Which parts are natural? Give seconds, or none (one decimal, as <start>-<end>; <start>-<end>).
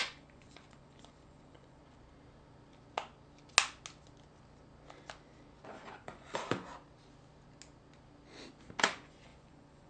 1.8-5.7; 6.7-8.8